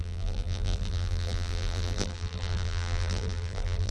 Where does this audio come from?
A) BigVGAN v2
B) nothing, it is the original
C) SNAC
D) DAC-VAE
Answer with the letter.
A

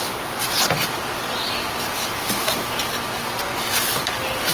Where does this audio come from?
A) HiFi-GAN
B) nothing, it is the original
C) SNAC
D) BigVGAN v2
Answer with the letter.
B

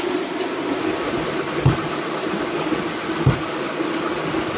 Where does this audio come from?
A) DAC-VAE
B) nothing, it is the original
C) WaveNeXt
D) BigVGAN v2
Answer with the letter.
B